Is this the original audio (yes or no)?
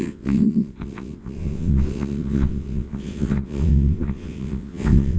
no